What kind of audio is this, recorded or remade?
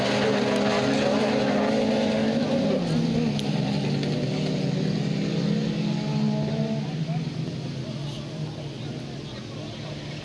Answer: recorded